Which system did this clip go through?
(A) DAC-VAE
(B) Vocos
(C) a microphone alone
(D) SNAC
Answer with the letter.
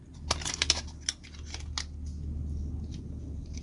C